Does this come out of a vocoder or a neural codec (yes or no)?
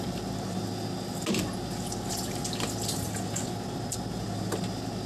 no